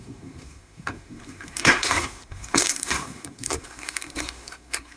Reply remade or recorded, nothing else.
remade